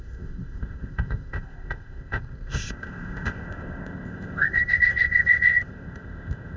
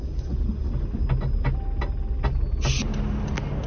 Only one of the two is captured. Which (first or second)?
second